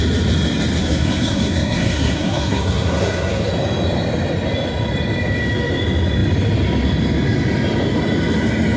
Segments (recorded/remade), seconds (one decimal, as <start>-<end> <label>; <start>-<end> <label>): 0.0-0.8 recorded; 0.8-3.5 remade; 3.5-8.8 recorded